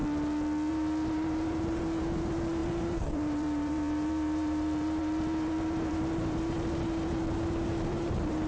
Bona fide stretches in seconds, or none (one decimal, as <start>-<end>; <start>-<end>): 0.0-0.7